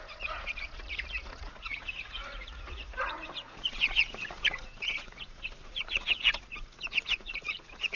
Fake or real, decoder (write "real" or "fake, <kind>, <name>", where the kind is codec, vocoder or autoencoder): fake, vocoder, Vocos